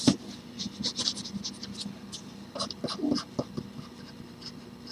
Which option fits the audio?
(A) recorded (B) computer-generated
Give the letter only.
A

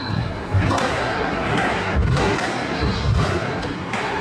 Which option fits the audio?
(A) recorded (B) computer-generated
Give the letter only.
B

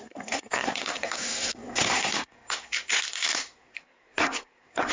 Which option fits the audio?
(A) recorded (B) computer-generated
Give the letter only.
B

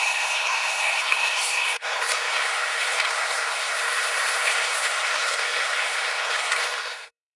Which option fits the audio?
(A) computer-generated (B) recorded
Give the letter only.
A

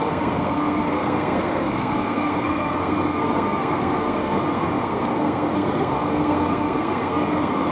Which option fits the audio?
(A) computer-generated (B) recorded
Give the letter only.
A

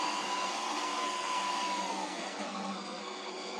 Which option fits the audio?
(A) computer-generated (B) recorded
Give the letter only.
A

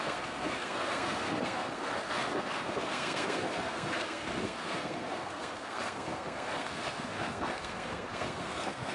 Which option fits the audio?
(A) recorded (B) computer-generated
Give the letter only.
B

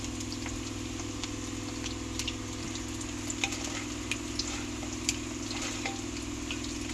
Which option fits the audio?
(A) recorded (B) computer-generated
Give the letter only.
A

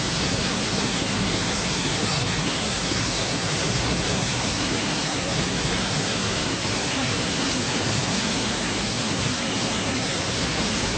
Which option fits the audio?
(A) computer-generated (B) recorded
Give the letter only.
A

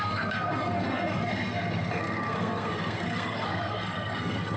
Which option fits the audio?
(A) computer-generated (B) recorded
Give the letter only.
A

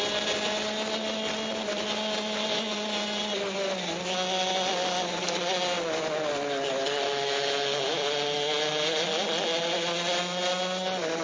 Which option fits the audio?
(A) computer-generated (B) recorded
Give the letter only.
B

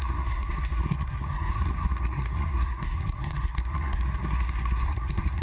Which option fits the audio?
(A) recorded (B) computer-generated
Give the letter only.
B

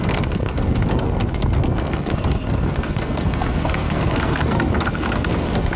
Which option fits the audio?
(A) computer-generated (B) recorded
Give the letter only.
A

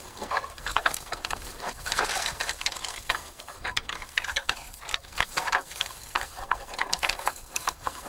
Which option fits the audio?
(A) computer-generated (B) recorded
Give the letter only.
A